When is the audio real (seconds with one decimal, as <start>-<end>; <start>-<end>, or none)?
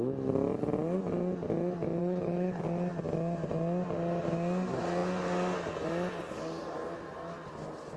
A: 0.0-2.0; 2.6-8.0